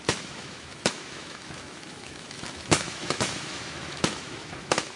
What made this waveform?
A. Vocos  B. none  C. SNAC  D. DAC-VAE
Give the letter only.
D